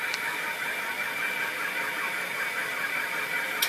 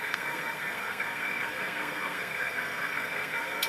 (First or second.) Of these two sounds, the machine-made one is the second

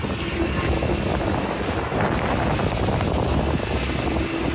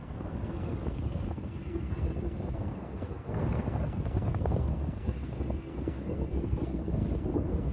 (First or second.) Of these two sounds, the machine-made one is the second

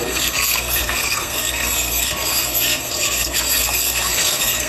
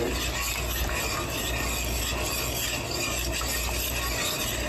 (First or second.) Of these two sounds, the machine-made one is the first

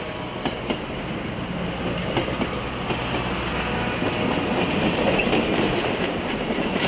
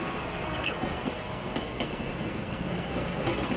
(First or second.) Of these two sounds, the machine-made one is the second